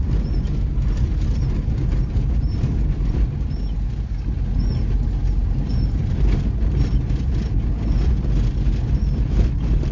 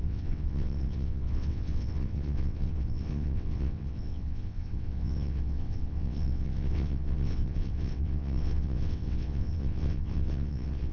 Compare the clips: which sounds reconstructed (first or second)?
second